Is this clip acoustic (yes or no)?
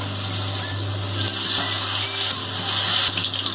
yes